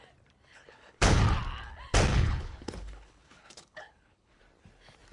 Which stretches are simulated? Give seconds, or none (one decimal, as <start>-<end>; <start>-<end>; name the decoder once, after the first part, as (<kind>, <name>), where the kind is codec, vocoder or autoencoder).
0.5-1.2 (codec, HILCodec); 2.1-4.4